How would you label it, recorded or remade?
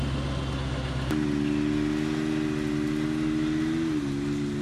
recorded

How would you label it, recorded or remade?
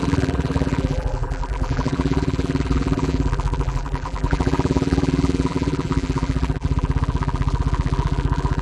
remade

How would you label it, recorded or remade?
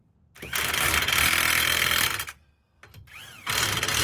remade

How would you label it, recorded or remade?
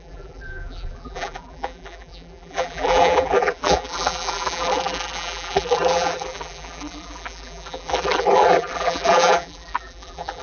remade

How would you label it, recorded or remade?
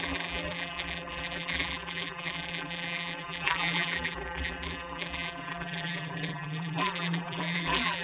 remade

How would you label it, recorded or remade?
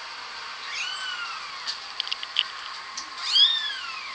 remade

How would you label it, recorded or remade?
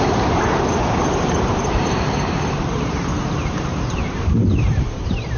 remade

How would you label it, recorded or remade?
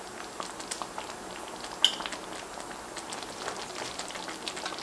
recorded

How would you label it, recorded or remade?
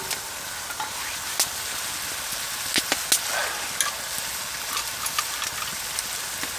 recorded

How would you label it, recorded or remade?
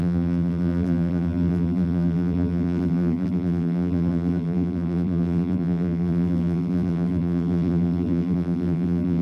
remade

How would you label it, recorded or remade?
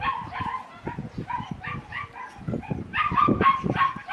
remade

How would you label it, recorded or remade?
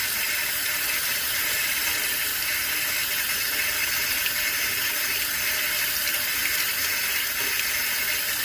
recorded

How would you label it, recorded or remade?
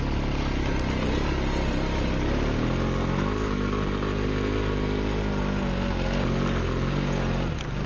recorded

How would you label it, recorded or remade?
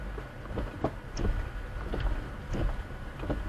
recorded